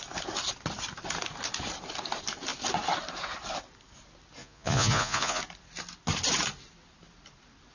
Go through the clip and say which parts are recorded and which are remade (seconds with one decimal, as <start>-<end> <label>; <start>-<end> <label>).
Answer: 0.0-4.4 recorded; 4.4-5.4 remade; 5.4-7.7 recorded